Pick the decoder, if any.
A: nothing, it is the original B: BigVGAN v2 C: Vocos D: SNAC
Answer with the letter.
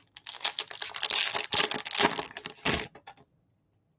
A